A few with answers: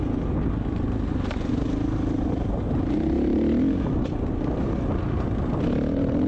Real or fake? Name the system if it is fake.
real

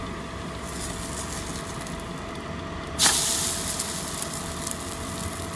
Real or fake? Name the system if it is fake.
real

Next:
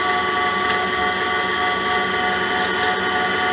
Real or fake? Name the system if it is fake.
real